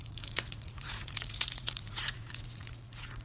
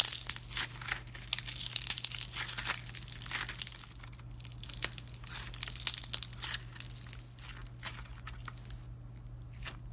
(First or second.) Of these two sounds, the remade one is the first